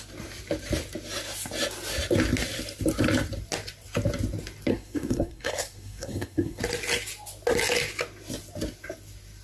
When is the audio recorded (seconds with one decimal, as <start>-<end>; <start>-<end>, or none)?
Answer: 0.0-4.7; 6.6-9.4